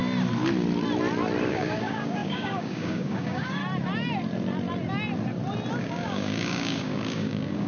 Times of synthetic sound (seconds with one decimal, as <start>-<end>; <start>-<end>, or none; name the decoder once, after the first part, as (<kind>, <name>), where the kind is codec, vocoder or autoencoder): 1.5-3.6 (codec, DAC); 5.8-7.7